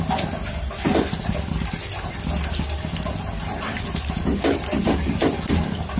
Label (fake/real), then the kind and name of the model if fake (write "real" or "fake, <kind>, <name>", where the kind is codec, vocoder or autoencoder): real